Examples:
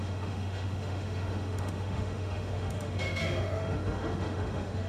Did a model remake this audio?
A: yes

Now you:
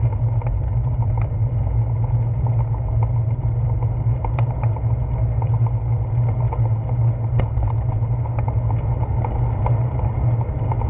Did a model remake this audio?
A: no